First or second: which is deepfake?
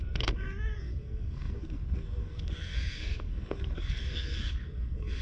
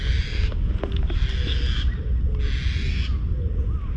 first